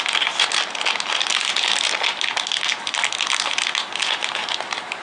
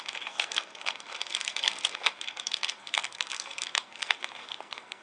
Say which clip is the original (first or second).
first